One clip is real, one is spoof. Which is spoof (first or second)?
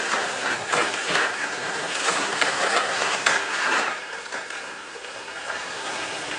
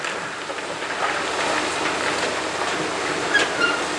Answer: first